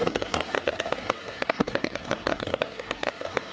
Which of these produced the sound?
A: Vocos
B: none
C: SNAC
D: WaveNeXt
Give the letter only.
C